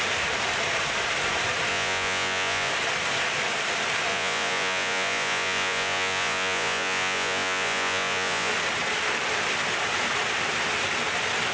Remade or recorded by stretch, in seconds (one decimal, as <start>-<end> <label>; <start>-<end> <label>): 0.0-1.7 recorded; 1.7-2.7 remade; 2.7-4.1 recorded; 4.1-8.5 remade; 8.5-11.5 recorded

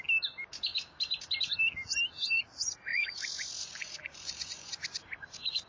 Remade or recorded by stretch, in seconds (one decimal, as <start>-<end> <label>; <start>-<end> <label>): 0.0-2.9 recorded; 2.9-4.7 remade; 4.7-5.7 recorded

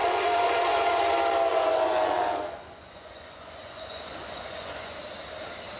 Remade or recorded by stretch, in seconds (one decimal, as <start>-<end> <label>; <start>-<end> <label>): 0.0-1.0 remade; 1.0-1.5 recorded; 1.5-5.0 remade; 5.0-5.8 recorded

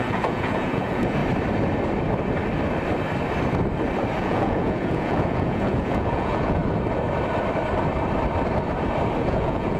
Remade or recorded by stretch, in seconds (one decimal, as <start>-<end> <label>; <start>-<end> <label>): 0.0-1.2 remade; 1.2-4.2 recorded; 4.2-6.6 remade; 6.6-9.2 recorded; 9.2-9.8 remade

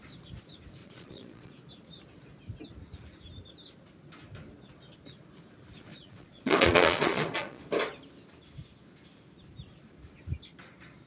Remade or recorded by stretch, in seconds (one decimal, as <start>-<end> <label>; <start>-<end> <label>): 0.0-0.8 recorded; 0.8-1.5 remade; 1.5-5.9 recorded; 5.9-7.6 remade; 7.6-11.1 recorded

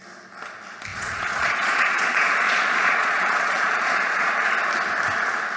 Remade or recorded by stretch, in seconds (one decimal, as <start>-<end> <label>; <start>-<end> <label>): 0.0-0.9 recorded; 0.9-4.3 remade; 4.3-5.6 recorded

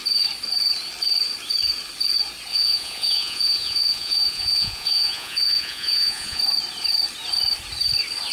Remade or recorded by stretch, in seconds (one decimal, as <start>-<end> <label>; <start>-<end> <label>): 0.0-2.5 recorded; 2.5-6.4 remade; 6.4-8.3 recorded